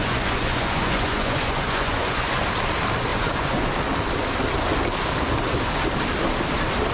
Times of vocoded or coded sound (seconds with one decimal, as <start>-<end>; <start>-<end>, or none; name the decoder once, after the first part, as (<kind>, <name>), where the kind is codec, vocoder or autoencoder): 0.0-2.4 (vocoder, Vocos); 3.1-3.7